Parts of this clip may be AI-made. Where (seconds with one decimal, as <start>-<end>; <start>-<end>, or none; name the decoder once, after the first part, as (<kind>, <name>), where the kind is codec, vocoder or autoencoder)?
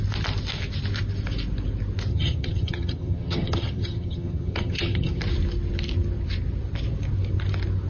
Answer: 2.1-5.2 (vocoder, HiFi-GAN)